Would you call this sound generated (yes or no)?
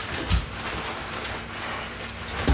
no